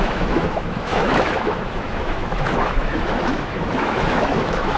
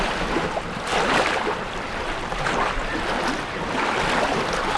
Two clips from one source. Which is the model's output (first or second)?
first